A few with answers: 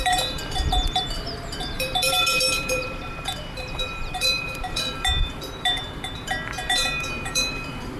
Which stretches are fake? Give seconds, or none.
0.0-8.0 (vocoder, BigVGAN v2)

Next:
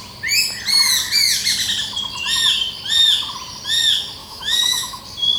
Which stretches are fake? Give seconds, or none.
4.2-5.0 (autoencoder, DAC-VAE)